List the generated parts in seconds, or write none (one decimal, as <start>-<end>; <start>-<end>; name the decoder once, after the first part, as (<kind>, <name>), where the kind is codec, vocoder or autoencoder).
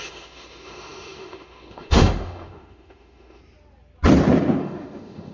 0.0-3.4 (autoencoder, DAC-VAE); 4.6-5.3